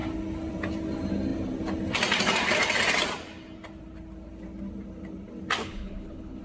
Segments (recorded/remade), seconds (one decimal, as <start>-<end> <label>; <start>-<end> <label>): 0.0-5.6 recorded; 5.6-6.4 remade